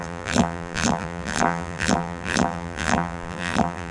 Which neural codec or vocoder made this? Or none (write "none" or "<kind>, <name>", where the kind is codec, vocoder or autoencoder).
vocoder, BigVGAN v2